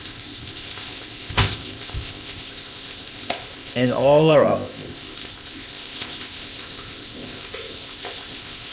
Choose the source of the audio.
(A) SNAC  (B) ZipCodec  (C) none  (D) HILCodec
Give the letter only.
B